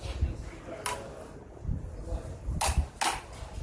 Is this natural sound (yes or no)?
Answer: yes